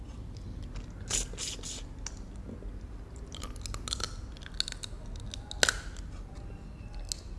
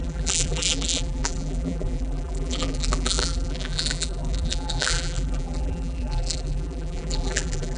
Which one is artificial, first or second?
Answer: second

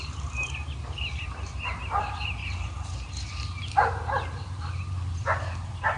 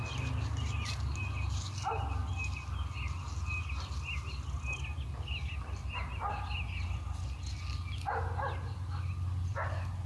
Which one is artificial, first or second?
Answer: first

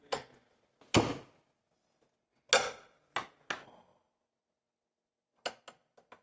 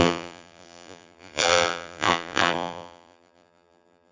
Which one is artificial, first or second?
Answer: second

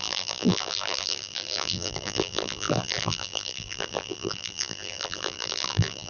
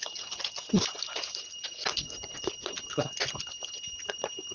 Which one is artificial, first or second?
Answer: first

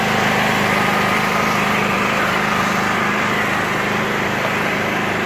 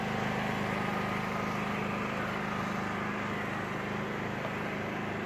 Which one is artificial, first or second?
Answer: first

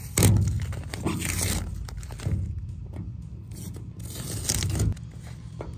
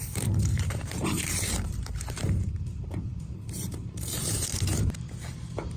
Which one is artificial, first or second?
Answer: second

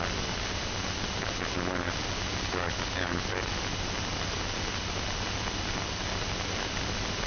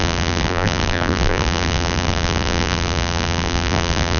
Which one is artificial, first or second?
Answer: second